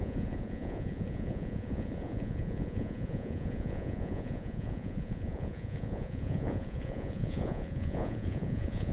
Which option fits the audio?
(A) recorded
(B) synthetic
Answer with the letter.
B